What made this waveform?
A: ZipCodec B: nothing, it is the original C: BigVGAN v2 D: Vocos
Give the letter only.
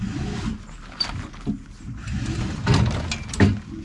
B